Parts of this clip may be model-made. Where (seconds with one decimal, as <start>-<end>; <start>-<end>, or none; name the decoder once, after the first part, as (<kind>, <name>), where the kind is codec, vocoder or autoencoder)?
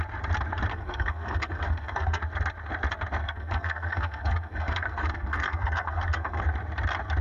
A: 0.7-2.2 (codec, SNAC); 3.2-6.4